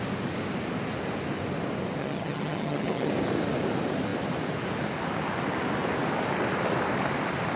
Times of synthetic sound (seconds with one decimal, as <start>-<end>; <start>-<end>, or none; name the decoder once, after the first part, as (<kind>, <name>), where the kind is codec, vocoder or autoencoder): 2.0-3.1 (vocoder, HiFi-GAN)

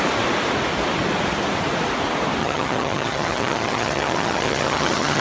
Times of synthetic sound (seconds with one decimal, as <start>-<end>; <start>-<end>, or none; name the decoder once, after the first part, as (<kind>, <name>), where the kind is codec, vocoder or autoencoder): 2.4-5.2 (vocoder, HiFi-GAN)